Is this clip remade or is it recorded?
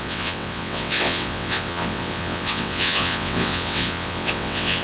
remade